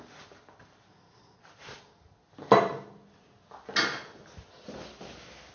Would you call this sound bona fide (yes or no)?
yes